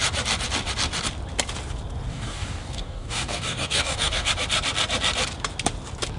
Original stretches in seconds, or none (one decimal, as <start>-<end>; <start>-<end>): 0.0-2.1; 4.3-6.2